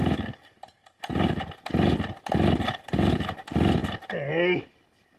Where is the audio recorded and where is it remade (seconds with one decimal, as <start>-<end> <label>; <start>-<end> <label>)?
0.0-3.8 recorded; 3.8-4.3 remade; 4.3-5.2 recorded